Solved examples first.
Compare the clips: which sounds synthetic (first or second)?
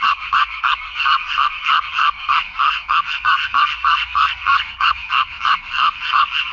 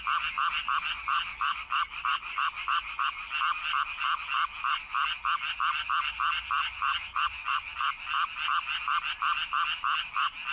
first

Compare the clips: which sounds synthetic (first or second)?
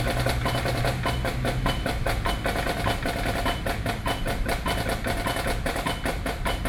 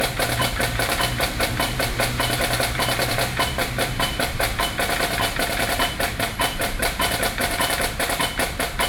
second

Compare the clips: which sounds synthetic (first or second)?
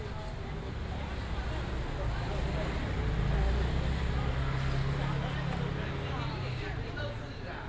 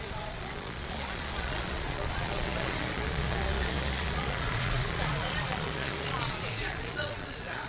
second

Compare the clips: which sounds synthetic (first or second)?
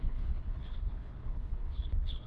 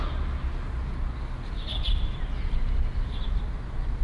first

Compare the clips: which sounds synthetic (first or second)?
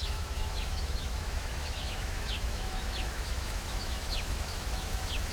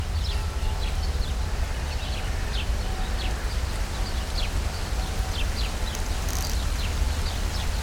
first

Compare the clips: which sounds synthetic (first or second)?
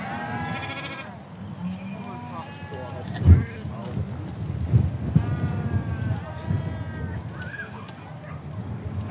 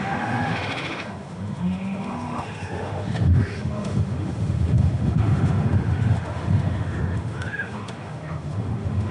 second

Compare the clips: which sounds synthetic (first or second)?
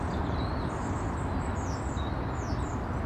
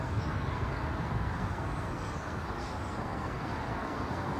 second